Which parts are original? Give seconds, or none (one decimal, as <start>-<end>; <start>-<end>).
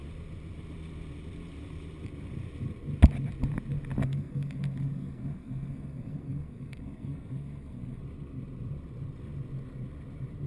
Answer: 0.0-4.0; 8.0-10.5